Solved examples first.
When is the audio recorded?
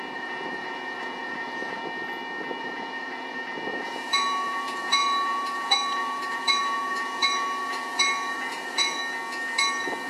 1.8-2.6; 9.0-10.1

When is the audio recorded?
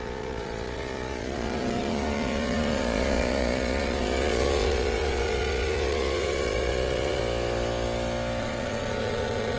7.2-8.4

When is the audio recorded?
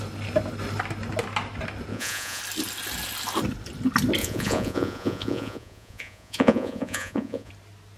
0.0-1.9; 2.4-4.2; 7.5-8.0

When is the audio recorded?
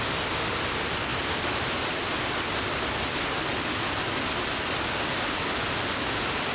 0.0-6.5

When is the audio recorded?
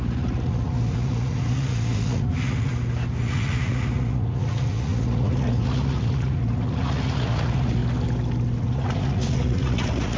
2.7-3.2; 7.8-8.6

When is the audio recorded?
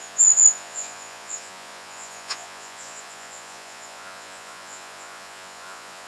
none